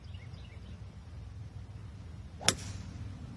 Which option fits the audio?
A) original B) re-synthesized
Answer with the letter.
A